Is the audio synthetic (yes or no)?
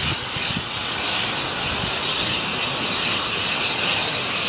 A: no